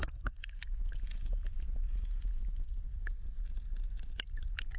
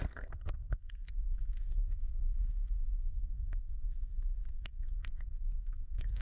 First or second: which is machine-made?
second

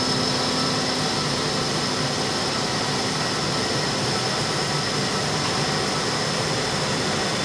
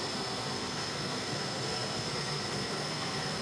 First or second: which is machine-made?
second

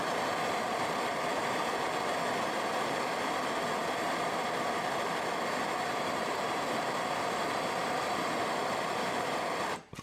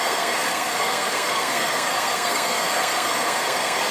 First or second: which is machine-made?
second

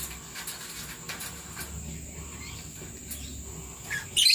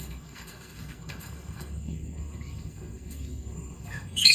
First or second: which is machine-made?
second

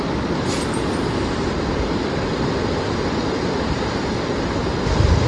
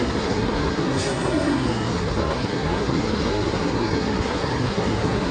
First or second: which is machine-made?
second